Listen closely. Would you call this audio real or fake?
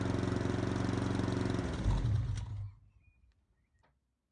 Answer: real